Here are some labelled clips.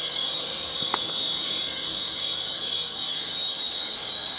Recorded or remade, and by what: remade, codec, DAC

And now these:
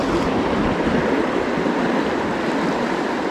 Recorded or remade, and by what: recorded